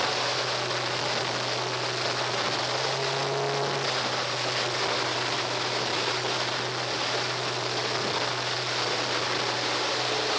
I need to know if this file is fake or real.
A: real